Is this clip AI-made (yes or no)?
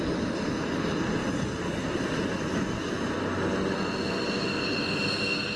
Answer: no